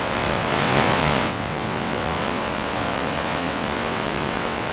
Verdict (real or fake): fake